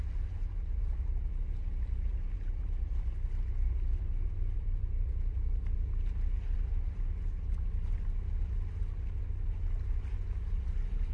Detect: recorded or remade recorded